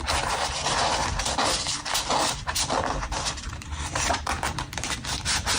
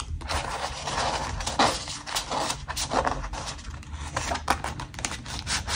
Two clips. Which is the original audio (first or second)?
second